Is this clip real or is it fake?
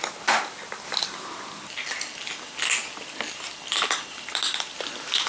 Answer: real